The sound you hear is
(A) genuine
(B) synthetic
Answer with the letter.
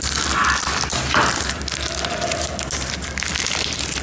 A